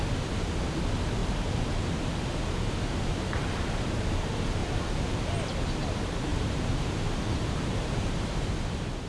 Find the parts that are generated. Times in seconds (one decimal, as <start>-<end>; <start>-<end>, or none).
1.2-2.0; 4.6-5.5; 6.3-8.1